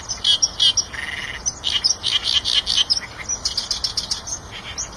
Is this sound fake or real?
real